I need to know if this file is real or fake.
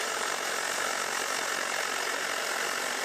real